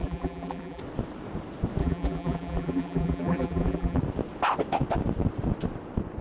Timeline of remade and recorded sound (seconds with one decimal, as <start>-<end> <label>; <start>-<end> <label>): 0.0-0.8 remade; 0.8-1.8 recorded; 1.8-4.0 remade; 4.0-6.2 recorded